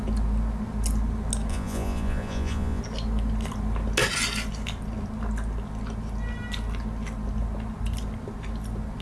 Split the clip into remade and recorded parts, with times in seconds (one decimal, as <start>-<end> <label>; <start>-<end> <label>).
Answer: 0.0-1.5 recorded; 1.5-2.8 remade; 2.8-9.0 recorded